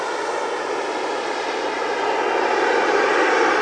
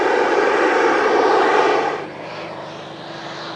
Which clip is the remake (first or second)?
second